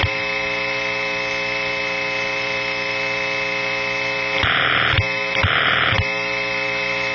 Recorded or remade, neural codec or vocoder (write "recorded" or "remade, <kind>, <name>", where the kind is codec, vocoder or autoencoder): recorded